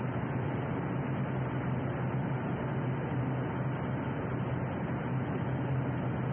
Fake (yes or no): no